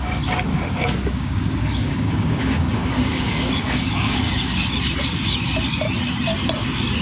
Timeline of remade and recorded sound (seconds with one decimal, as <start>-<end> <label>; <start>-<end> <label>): 0.0-0.5 recorded; 0.5-4.3 remade; 4.3-7.0 recorded